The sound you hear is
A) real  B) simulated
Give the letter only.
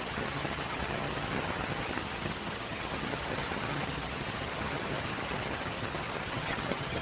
B